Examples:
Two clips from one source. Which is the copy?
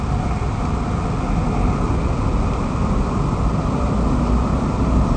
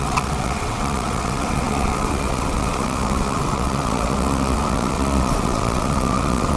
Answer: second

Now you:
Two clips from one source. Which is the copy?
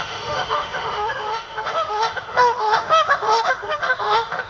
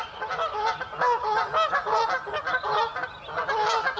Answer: first